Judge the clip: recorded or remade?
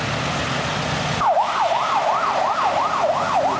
recorded